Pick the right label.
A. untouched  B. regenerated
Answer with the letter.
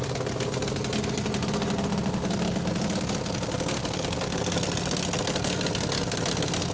A